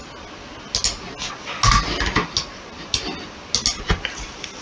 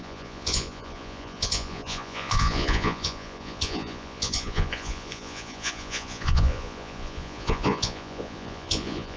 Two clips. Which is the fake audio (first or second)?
second